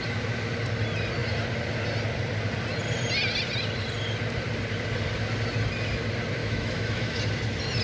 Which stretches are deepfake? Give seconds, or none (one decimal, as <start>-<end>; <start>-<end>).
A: 6.4-7.2